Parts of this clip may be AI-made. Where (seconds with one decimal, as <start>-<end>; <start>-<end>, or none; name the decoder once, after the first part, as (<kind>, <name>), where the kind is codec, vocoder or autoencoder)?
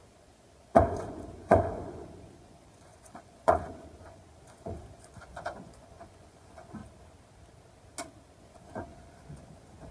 0.0-6.8 (vocoder, Vocos); 8.4-9.9